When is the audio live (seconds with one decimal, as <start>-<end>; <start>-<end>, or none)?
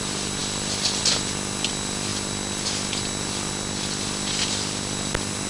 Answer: 0.0-5.5